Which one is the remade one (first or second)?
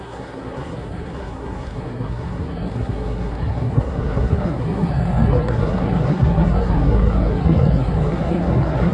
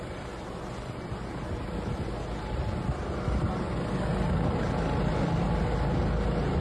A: first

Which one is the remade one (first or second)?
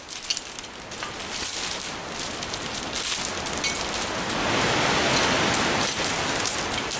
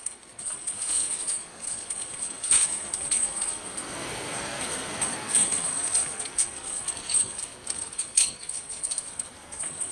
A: second